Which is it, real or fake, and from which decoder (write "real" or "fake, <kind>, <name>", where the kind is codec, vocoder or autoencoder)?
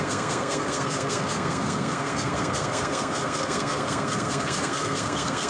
fake, codec, SNAC